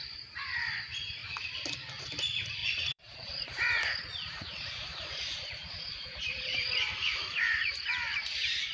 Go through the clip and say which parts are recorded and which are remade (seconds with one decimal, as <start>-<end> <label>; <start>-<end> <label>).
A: 0.0-2.6 recorded; 2.6-7.7 remade; 7.7-8.7 recorded